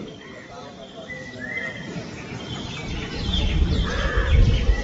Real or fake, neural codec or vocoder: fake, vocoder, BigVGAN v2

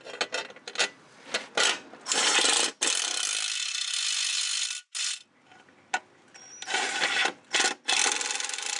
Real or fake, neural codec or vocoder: real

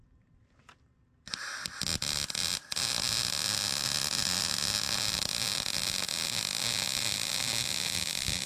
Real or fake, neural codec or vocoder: real